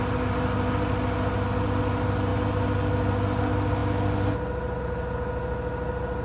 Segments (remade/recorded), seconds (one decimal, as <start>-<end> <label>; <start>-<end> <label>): 0.0-6.2 recorded